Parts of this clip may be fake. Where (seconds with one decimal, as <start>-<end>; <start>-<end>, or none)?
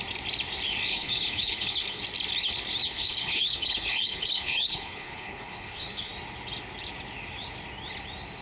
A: 0.9-2.0; 2.8-6.1